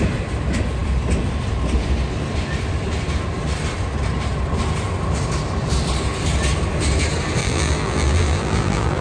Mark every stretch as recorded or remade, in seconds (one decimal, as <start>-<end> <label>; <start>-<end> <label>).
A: 0.0-7.4 recorded; 7.4-9.0 remade